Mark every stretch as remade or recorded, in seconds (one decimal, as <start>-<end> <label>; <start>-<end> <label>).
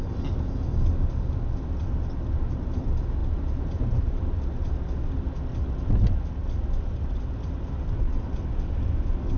0.0-9.4 recorded